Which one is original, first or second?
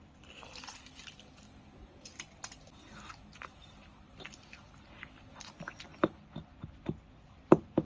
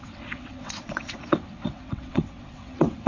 first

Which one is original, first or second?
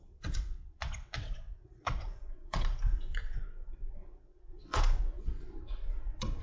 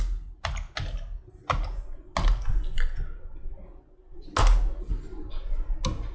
second